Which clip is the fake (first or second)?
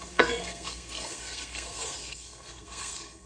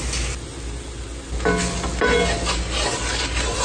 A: first